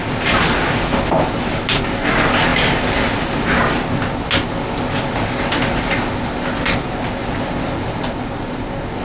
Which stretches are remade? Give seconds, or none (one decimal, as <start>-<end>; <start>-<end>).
none